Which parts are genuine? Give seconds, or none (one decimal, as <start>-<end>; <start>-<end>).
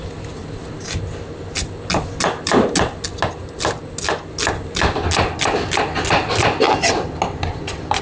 0.0-8.0